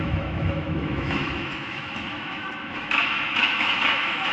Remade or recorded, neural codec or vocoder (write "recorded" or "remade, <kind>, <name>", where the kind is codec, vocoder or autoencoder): remade, autoencoder, DAC-VAE